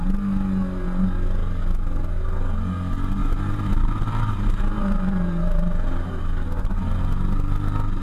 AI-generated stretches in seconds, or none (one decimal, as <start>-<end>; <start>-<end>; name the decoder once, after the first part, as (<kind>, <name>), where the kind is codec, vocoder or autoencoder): 3.2-6.2 (vocoder, BigVGAN v2)